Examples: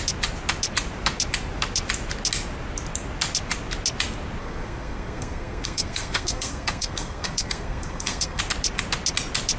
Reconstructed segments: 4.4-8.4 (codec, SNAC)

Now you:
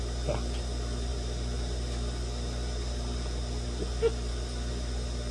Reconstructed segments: none

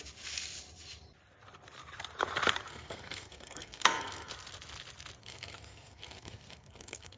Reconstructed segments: 2.7-4.3 (codec, SNAC); 5.2-7.2

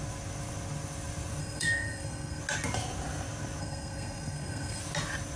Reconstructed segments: 1.4-2.4 (codec, SNAC); 3.6-4.8

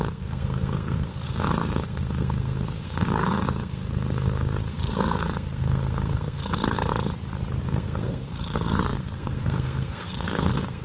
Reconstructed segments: 0.0-6.9 (codec, SNAC); 7.6-10.8

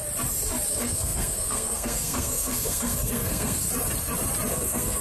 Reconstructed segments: 0.7-3.6 (codec, SNAC); 4.5-5.0